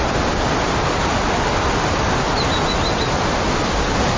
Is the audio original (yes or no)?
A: yes